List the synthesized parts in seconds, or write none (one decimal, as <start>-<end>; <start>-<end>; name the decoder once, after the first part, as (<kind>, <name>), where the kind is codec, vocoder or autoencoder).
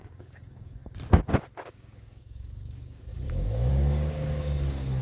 0.0-0.8 (codec, DAC); 1.7-5.0